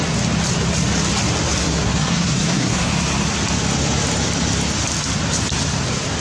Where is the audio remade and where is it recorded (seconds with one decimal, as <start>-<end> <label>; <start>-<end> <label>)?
0.0-1.6 recorded; 1.6-2.9 remade; 2.9-6.2 recorded